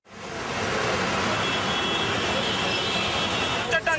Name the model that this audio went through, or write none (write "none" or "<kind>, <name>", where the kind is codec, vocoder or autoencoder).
none